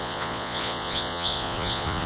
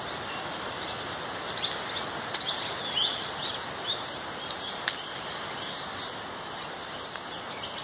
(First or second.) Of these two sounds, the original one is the second